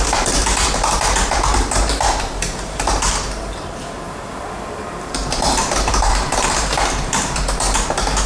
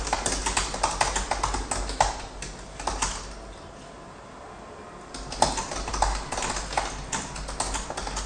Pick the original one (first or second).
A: second